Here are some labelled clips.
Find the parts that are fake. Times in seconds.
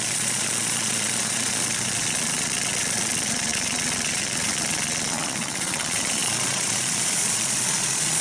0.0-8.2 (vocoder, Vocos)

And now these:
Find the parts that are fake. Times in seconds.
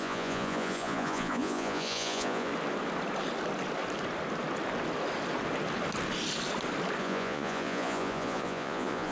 0.0-2.5 (vocoder, Vocos); 7.0-9.1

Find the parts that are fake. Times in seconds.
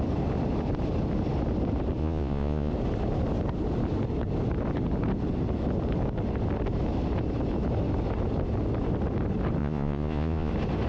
2.0-2.7 (vocoder, Vocos); 9.6-10.5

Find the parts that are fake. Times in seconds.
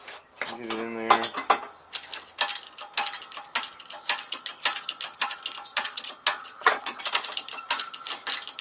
5.7-7.0 (vocoder, Vocos)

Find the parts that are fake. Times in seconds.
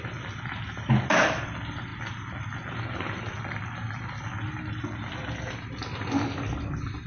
none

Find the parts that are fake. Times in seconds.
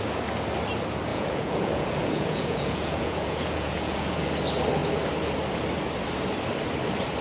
1.1-4.3 (vocoder, Vocos)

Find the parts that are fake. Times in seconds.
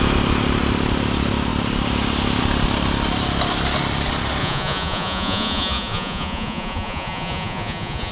4.4-8.1 (vocoder, Vocos)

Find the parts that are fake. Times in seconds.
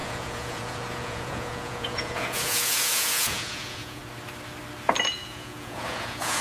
0.0-4.0 (vocoder, Vocos); 5.1-6.4